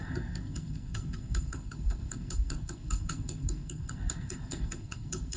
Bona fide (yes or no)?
no